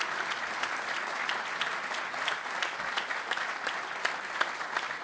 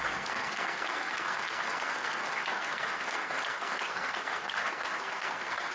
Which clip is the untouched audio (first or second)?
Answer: first